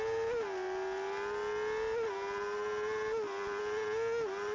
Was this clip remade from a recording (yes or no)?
no